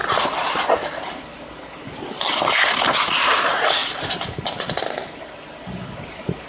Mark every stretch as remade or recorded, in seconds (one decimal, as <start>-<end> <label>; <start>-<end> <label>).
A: 0.0-6.5 recorded